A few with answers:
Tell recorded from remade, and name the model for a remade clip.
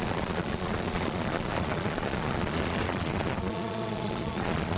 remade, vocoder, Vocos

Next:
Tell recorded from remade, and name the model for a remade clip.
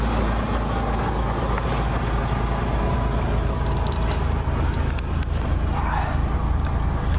recorded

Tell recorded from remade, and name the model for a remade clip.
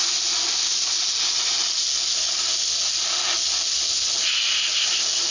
recorded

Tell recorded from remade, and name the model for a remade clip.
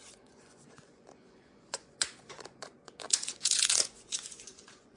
remade, vocoder, Vocos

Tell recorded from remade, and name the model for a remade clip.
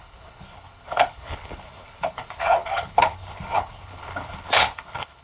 remade, codec, HILCodec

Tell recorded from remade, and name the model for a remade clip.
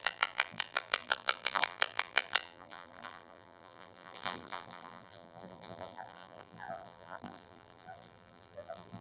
remade, vocoder, BigVGAN v2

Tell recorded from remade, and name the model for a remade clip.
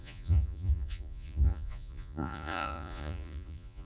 remade, vocoder, Vocos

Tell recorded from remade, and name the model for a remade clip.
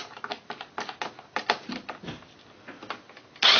recorded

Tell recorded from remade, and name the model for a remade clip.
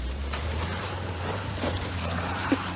remade, vocoder, BigVGAN v2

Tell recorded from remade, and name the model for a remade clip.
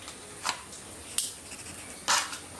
recorded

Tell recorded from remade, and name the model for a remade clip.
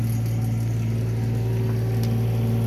recorded